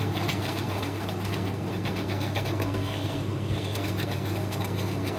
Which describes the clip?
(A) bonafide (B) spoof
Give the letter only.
B